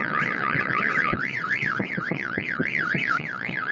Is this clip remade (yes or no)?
yes